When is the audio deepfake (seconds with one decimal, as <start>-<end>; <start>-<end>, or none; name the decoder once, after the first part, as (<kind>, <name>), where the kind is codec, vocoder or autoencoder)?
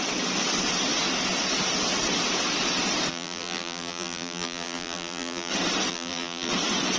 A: 3.1-5.5 (vocoder, BigVGAN v2); 5.9-6.5